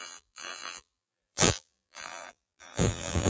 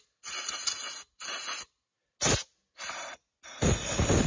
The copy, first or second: first